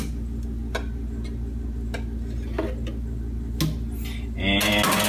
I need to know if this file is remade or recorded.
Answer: recorded